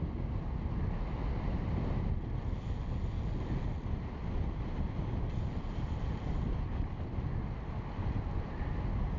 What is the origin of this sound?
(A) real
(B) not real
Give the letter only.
A